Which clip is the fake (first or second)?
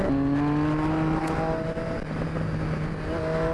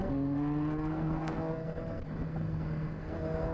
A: second